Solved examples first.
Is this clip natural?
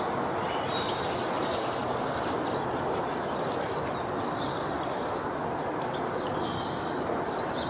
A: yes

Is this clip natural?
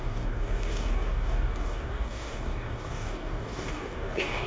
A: no